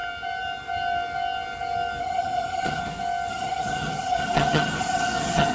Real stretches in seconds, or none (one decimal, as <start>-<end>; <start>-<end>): 0.0-2.0; 2.8-3.3